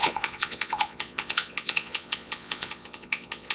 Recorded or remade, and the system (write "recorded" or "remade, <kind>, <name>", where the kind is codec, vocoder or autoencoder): remade, vocoder, Vocos